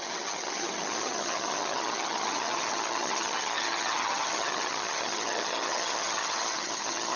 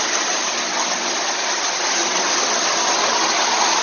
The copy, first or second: first